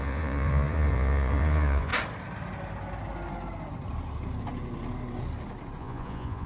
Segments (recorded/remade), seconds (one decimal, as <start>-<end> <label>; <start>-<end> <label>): 0.0-1.9 remade; 1.9-5.8 recorded; 5.8-6.5 remade